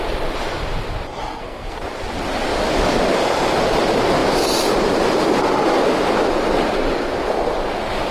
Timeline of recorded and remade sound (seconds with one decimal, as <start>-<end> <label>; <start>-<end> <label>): 0.0-1.1 recorded; 1.1-1.8 remade; 1.8-8.1 recorded